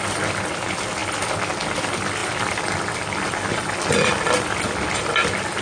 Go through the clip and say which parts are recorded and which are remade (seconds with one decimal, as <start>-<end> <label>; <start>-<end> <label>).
0.0-5.6 recorded